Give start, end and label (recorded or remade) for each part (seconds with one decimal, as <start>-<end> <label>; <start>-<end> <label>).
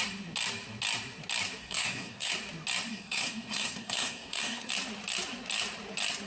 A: 0.0-1.6 recorded; 1.6-2.3 remade; 2.3-2.9 recorded; 2.9-4.7 remade; 4.7-6.3 recorded